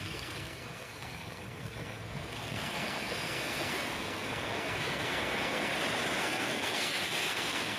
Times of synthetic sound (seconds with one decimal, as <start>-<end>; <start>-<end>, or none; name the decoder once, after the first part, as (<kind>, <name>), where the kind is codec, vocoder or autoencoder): 0.0-5.7 (codec, SNAC); 6.2-7.8

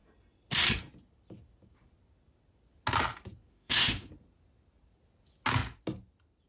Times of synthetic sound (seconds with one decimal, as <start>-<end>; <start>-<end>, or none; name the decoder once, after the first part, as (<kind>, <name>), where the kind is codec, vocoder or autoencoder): 3.5-4.1 (autoencoder, DAC-VAE)

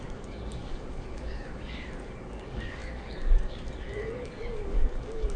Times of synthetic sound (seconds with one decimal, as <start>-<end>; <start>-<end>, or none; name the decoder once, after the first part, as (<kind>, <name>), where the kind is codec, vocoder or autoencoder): 0.0-5.4 (codec, DAC)

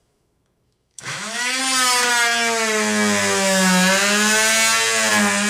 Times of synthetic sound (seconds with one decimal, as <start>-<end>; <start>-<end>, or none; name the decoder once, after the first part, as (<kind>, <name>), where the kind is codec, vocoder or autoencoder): 0.0-1.6 (autoencoder, DAC-VAE)

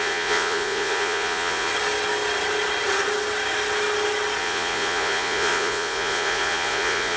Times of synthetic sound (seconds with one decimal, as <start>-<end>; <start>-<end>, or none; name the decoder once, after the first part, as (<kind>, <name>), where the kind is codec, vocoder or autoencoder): 0.0-1.7 (vocoder, Vocos); 4.4-7.2

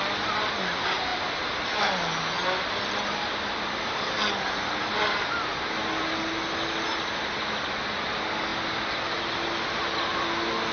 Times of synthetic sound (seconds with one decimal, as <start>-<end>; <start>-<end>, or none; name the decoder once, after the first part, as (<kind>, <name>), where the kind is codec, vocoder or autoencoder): none

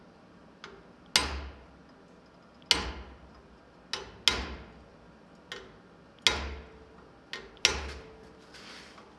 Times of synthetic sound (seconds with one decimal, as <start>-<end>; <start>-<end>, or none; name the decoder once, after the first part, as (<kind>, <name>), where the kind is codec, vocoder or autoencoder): none

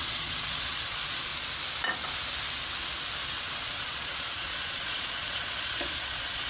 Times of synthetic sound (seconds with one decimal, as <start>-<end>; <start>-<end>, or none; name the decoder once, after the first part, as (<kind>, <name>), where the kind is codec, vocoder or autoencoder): 0.0-1.3 (vocoder, Vocos); 3.4-6.5